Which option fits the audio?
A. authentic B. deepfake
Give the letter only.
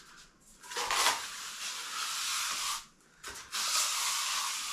A